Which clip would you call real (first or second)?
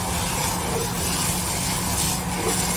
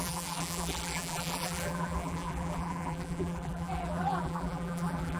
first